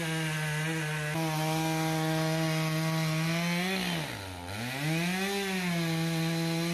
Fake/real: real